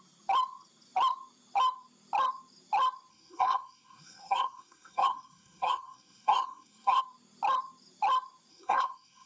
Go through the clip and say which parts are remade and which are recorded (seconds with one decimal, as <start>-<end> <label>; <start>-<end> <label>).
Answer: 0.0-3.1 recorded; 3.1-7.0 remade; 7.0-8.5 recorded; 8.5-9.3 remade